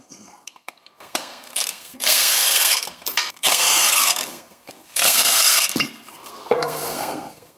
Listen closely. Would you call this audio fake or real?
fake